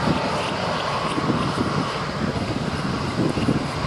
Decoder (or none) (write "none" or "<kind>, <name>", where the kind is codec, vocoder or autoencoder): none